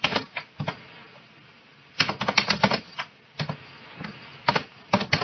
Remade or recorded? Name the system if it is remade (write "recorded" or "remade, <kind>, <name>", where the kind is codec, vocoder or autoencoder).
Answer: recorded